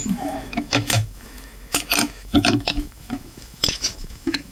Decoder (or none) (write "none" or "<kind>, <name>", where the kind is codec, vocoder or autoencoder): autoencoder, DAC-VAE